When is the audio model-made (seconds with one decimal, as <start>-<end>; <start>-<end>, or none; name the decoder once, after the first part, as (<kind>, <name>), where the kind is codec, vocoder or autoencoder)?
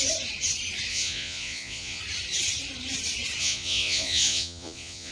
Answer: 0.9-2.0 (vocoder, Vocos); 3.4-5.1